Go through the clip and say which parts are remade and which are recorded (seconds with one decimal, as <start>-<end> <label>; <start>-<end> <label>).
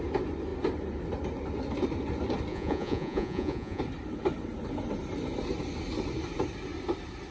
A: 0.0-2.5 recorded; 2.5-3.8 remade; 3.8-7.3 recorded